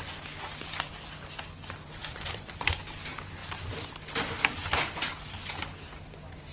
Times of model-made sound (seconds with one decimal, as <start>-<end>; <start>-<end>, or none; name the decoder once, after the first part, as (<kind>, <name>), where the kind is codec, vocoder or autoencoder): 2.0-2.6 (vocoder, BigVGAN v2)